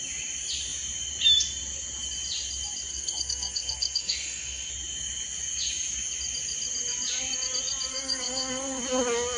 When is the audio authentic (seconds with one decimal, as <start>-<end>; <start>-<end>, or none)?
0.0-2.9; 4.7-7.9; 8.8-9.4